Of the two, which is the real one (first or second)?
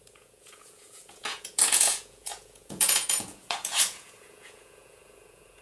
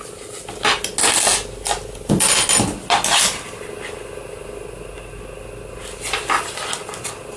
second